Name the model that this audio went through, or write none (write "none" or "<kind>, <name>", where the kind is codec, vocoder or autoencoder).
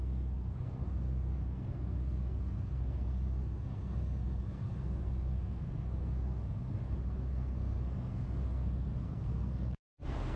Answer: codec, SNAC